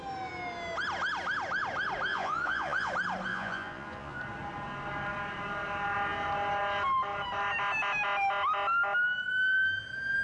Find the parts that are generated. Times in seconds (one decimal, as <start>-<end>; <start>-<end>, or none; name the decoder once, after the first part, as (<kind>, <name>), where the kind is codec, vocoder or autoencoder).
2.1-2.9 (vocoder, Vocos); 3.3-4.2